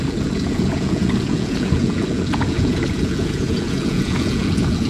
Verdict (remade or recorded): remade